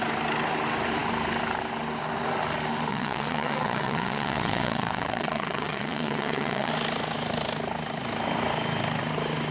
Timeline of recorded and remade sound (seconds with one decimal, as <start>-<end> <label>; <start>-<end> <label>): 0.0-2.9 recorded; 2.9-6.7 remade; 6.7-9.5 recorded